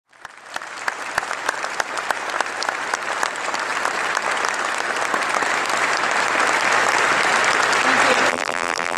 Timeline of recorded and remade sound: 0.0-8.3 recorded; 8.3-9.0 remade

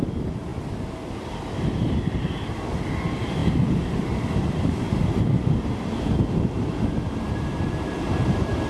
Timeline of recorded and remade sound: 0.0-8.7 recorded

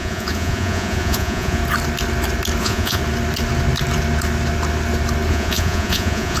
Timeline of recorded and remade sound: 0.0-1.6 remade; 1.6-2.6 recorded; 2.6-3.0 remade; 3.0-5.3 recorded; 5.3-6.4 remade

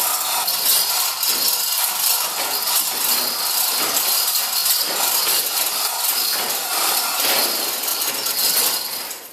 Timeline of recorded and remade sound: 0.0-9.3 recorded